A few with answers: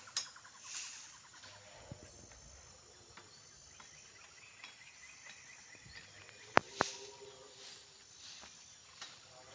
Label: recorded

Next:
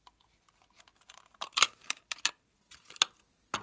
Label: recorded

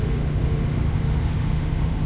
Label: remade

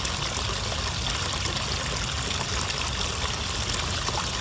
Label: recorded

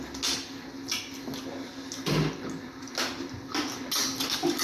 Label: recorded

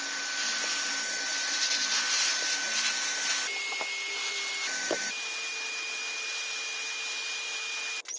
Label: recorded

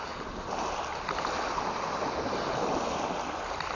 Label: recorded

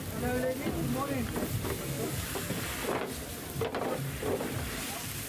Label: recorded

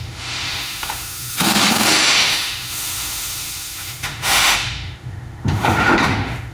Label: remade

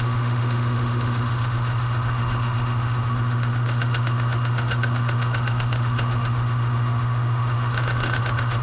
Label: remade